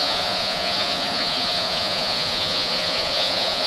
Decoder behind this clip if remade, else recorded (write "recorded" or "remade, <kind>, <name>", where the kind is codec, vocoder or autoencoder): remade, vocoder, Vocos